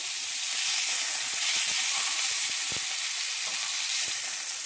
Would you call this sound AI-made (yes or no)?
no